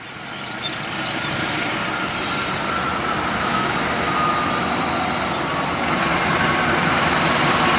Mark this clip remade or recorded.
recorded